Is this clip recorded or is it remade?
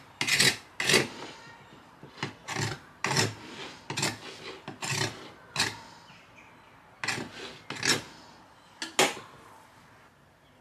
recorded